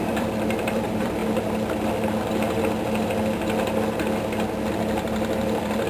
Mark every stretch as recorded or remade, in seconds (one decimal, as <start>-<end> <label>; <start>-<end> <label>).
0.0-1.2 remade; 1.2-4.7 recorded; 4.7-5.9 remade